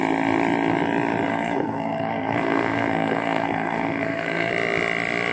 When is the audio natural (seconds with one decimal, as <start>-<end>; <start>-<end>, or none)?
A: 0.0-1.3; 4.5-5.3